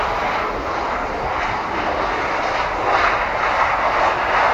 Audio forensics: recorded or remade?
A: recorded